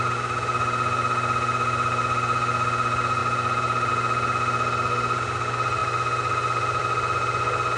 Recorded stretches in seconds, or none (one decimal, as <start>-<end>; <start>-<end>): 0.0-3.2; 3.9-7.8